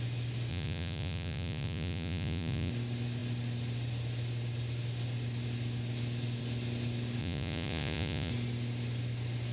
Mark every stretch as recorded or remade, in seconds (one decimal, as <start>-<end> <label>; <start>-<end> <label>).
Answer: 0.0-0.5 recorded; 0.5-2.7 remade; 2.7-7.2 recorded; 7.2-8.3 remade; 8.3-9.5 recorded